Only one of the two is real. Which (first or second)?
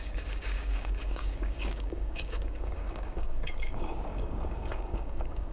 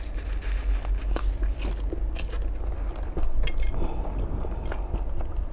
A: second